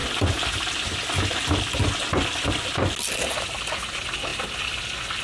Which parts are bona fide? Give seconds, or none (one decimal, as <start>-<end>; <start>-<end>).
0.0-5.2